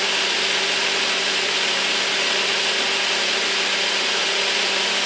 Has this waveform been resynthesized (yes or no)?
no